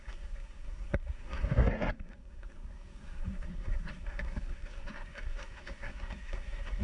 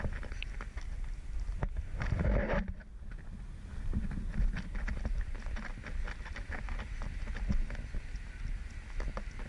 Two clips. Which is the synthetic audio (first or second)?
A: first